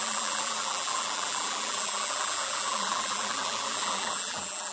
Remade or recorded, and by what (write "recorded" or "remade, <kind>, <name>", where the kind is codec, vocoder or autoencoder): remade, vocoder, BigVGAN v2